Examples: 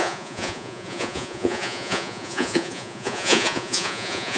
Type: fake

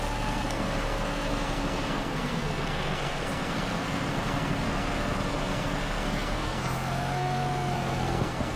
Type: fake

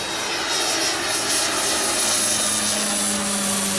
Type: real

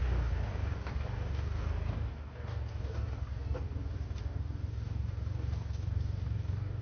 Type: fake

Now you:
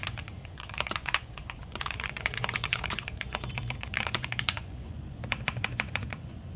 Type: fake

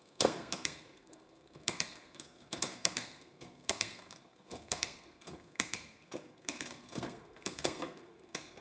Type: fake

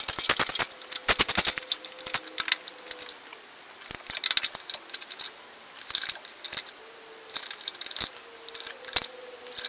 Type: real